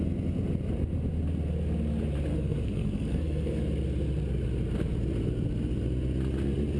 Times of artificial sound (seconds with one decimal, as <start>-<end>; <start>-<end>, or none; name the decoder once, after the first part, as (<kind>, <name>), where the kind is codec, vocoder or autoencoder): 2.3-3.6 (codec, SNAC)